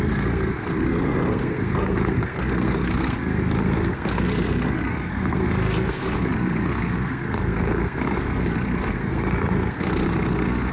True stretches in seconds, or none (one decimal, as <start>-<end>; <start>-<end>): none